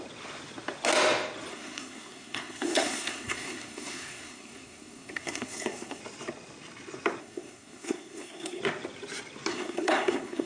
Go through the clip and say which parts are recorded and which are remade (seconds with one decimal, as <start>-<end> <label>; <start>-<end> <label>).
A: 0.0-1.5 recorded; 1.5-6.0 remade; 6.0-7.2 recorded; 7.2-8.6 remade; 8.6-9.5 recorded; 9.5-10.5 remade